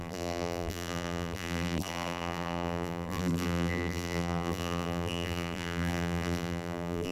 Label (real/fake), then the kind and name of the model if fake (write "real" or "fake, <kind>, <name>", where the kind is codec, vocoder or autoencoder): fake, vocoder, BigVGAN v2